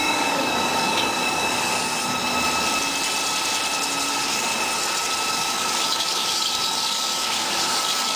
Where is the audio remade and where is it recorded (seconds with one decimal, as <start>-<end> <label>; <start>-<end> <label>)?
0.0-1.9 remade; 1.9-4.1 recorded; 4.1-4.5 remade; 4.5-5.3 recorded; 5.3-8.2 remade